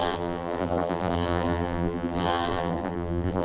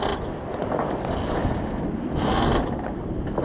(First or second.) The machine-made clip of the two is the first